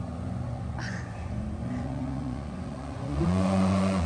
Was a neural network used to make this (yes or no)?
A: yes